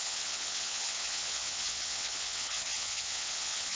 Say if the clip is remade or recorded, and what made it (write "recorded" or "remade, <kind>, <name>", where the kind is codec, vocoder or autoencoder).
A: remade, vocoder, WaveNeXt